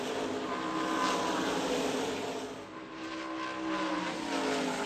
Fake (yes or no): no